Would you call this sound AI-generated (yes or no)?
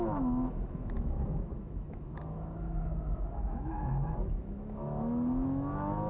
yes